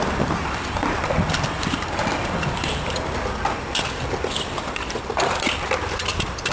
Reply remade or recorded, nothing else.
remade